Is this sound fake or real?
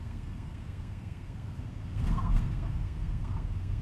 fake